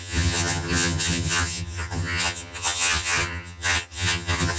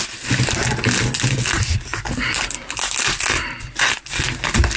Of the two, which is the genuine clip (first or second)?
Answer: second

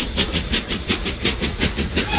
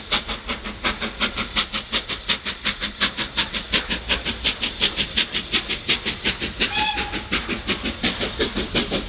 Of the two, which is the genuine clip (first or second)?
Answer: second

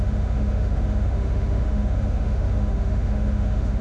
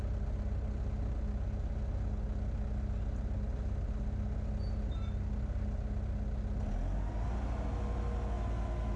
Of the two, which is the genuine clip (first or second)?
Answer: second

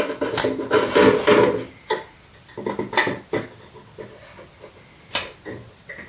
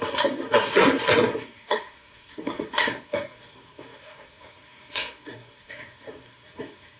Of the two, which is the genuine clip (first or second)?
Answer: first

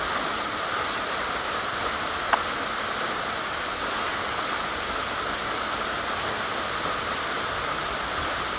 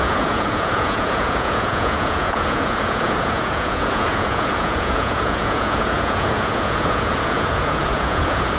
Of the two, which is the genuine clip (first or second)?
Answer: first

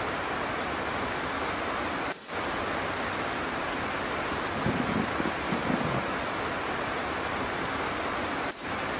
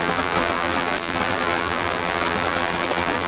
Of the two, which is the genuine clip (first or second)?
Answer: first